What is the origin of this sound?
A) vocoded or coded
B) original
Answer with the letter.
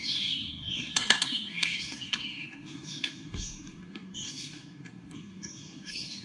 A